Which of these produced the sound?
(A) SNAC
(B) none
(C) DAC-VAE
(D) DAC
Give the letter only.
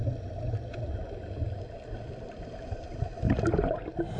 B